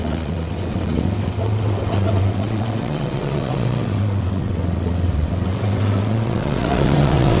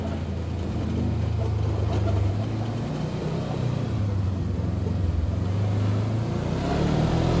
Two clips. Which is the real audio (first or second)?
second